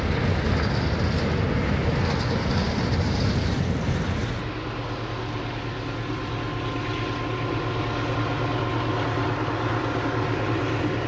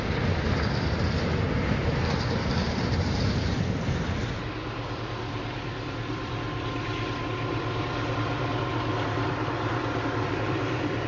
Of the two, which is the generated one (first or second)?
second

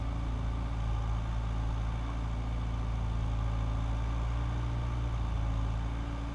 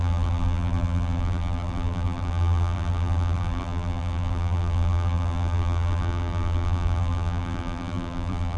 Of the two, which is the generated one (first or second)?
second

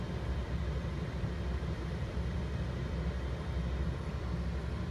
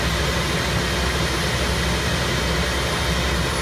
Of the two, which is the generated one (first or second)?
first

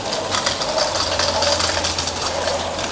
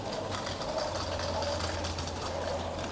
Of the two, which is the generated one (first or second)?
second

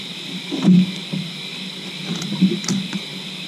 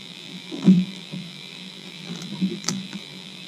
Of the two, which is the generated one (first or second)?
second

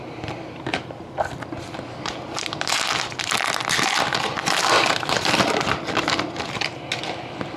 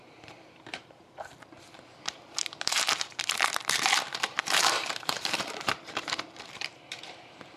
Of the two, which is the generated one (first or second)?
second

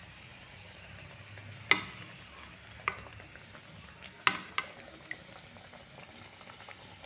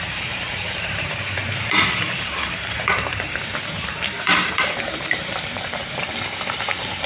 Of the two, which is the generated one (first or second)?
second